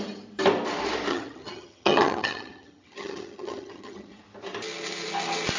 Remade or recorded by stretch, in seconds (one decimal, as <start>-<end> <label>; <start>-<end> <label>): 0.0-1.1 recorded; 1.1-4.2 remade; 4.2-5.6 recorded